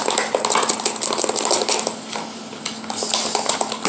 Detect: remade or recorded recorded